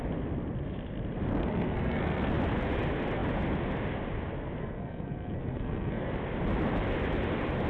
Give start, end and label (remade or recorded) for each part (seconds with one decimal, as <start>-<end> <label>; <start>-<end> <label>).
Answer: 0.0-1.3 recorded; 1.3-2.3 remade; 2.3-4.6 recorded; 4.6-6.1 remade; 6.1-7.7 recorded